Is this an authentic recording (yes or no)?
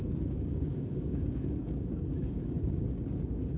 no